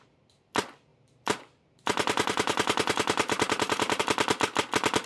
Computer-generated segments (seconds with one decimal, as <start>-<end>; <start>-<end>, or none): 0.9-4.0